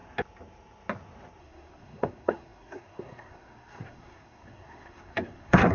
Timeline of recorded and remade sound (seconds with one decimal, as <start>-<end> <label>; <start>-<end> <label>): 0.0-1.4 recorded; 1.4-5.7 remade